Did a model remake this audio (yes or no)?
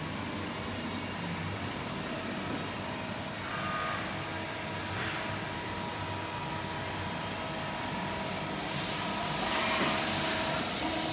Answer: no